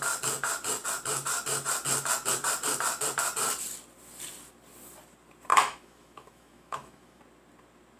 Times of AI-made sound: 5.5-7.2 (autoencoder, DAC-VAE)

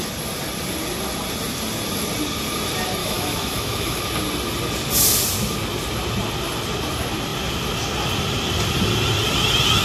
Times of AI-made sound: 3.0-4.0 (autoencoder, DAC-VAE)